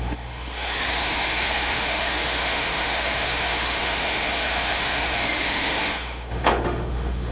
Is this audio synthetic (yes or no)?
yes